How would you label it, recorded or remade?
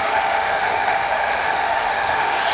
remade